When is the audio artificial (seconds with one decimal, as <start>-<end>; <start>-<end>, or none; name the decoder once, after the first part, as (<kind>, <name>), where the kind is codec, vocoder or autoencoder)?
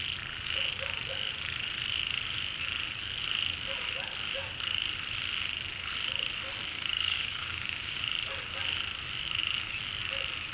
6.7-8.0 (codec, DAC)